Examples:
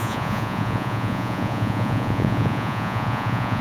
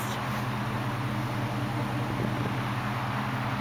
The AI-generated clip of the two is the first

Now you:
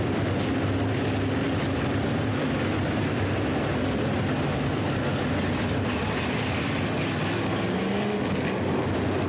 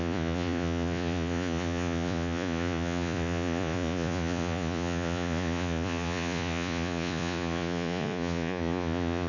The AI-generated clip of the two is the second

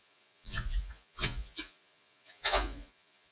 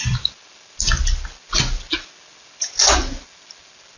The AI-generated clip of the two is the first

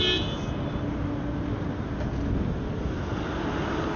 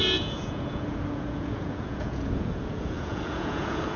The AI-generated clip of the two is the second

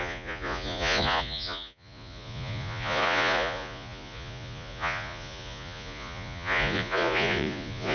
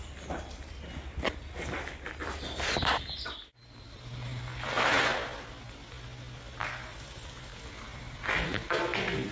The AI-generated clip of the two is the first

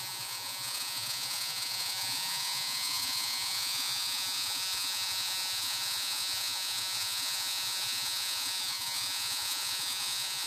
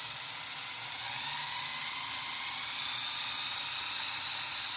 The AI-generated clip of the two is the first